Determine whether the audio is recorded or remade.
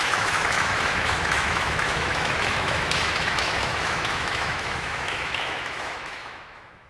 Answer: remade